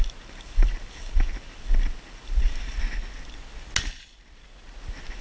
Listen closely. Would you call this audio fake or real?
real